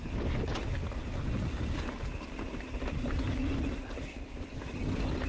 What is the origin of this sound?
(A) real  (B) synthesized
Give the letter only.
A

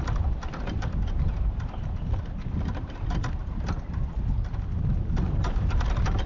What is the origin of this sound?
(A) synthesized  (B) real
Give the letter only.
A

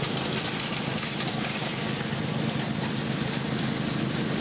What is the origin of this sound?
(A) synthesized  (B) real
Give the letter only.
B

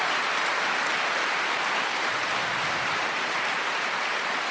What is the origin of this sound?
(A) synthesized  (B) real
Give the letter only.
A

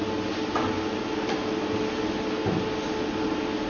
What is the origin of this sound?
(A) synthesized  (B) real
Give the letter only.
B